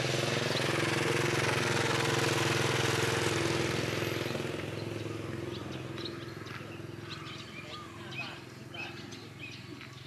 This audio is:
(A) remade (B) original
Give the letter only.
B